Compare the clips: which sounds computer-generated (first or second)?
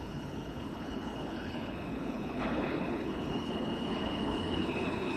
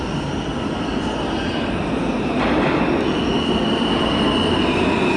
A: first